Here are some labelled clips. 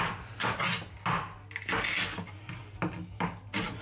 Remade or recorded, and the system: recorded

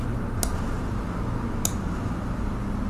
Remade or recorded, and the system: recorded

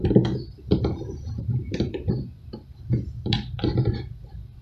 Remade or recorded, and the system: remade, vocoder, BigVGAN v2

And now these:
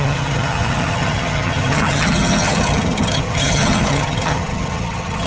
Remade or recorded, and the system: remade, vocoder, HiFi-GAN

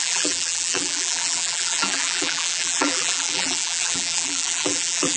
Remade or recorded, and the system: remade, vocoder, BigVGAN v2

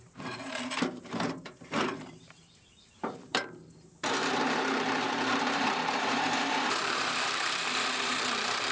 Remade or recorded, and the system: remade, vocoder, BigVGAN v2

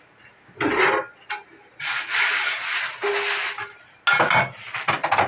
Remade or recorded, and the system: recorded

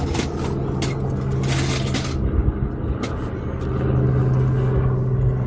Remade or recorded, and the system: recorded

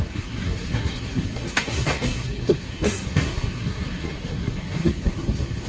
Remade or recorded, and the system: remade, codec, SNAC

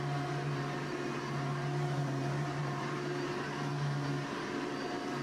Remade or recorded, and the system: recorded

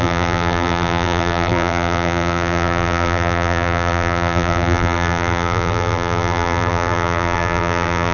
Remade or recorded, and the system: remade, vocoder, BigVGAN v2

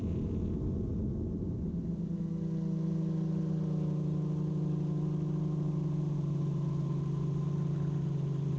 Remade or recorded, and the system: recorded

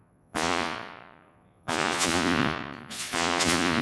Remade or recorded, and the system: remade, vocoder, Vocos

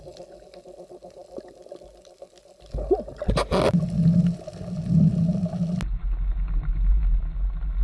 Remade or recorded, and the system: recorded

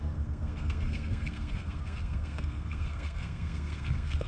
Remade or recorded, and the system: remade, codec, SNAC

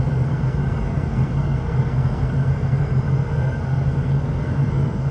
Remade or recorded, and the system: remade, codec, SNAC